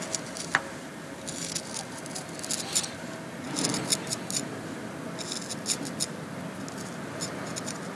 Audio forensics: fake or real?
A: real